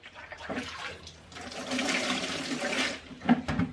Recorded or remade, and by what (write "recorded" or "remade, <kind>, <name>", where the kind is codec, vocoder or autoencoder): remade, vocoder, BigVGAN v2